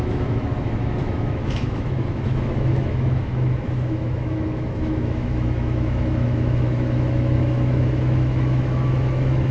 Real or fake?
fake